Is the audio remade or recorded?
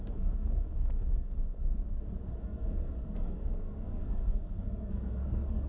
remade